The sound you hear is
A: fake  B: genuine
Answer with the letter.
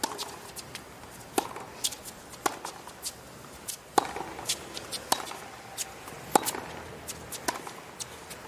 B